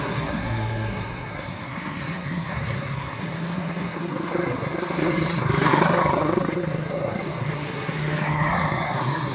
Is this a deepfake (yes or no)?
yes